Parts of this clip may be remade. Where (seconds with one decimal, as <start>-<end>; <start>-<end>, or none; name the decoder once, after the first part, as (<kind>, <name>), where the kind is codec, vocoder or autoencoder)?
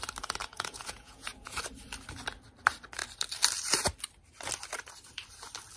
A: 0.4-1.6 (vocoder, Vocos)